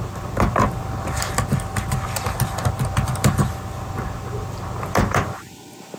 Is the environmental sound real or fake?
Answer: real